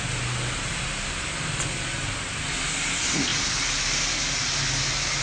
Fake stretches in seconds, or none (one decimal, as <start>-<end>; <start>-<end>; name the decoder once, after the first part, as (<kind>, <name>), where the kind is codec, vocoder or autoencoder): none